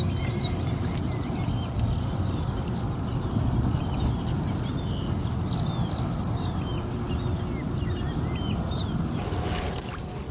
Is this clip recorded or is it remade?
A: recorded